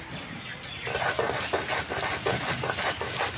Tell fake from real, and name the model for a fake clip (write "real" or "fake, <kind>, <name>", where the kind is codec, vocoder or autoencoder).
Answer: real